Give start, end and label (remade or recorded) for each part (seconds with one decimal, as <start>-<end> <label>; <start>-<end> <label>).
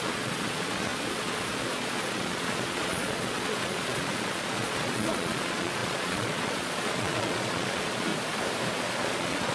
0.0-8.1 remade; 8.1-8.7 recorded; 8.7-9.5 remade